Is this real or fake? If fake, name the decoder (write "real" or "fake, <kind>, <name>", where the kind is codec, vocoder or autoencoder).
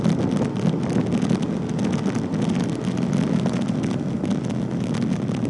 real